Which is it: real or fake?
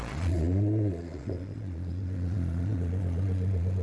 fake